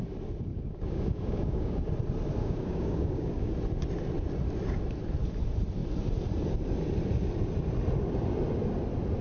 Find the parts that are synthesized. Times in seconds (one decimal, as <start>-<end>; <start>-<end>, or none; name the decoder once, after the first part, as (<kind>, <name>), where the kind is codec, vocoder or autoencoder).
0.5-1.9 (codec, DAC); 2.4-3.5